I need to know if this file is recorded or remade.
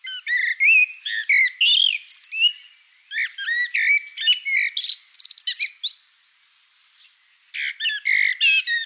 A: recorded